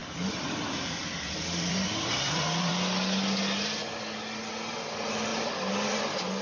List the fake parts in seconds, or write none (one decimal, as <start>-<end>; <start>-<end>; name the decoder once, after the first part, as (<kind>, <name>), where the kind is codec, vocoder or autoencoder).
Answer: 0.0-2.7 (vocoder, BigVGAN v2); 3.8-4.5; 5.3-6.0